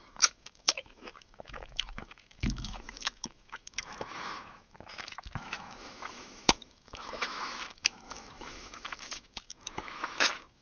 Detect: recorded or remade remade